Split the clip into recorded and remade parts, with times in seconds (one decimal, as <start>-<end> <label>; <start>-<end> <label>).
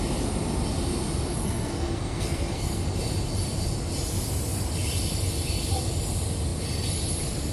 0.0-1.4 recorded; 1.4-2.8 remade; 2.8-7.5 recorded